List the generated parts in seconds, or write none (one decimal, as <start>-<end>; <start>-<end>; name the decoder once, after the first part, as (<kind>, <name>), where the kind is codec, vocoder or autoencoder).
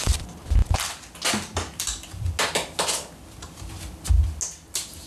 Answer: none